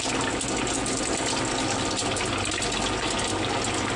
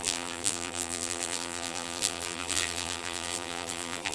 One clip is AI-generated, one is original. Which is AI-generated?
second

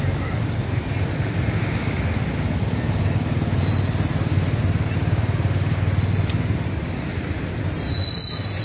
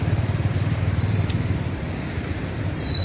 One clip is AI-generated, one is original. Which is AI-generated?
second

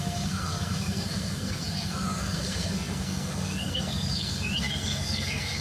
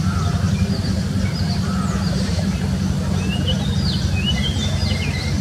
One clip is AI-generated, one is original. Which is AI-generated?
first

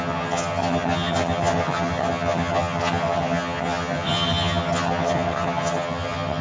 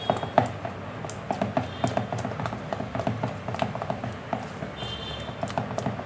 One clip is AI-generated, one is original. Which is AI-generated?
first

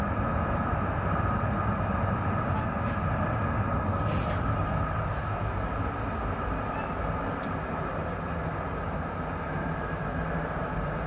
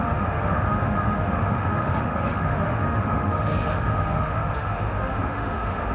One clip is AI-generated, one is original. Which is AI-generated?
second